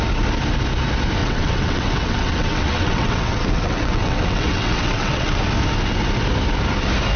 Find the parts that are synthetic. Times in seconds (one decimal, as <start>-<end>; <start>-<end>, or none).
1.2-5.4